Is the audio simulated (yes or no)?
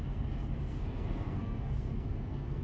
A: yes